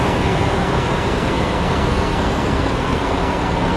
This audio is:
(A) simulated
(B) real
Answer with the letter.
A